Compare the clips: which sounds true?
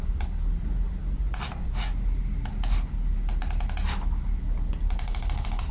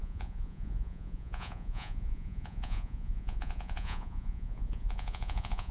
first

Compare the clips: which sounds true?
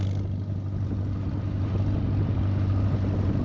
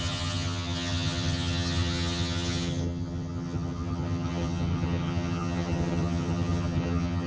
first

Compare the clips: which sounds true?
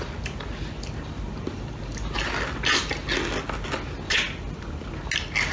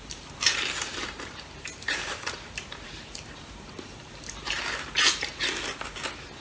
first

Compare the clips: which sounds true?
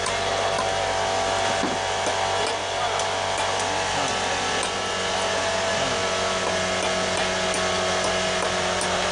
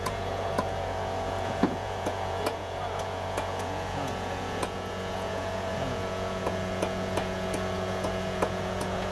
first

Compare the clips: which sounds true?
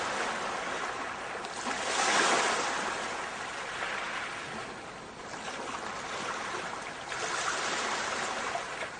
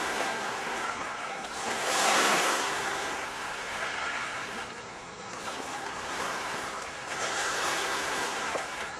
first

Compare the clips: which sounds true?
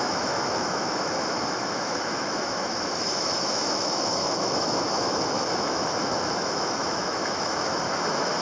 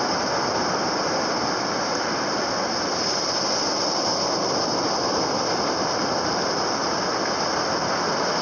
second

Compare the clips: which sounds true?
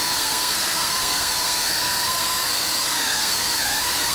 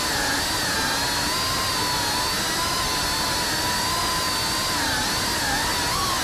second